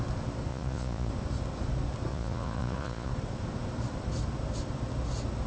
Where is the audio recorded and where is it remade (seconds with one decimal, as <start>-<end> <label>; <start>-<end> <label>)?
0.0-0.5 recorded; 0.5-1.1 remade; 1.1-2.1 recorded; 2.1-3.1 remade; 3.1-5.5 recorded